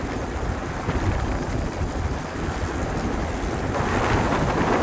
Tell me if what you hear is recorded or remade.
recorded